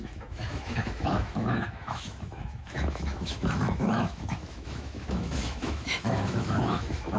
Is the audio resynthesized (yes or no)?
yes